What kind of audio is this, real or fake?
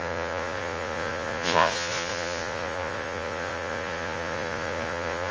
fake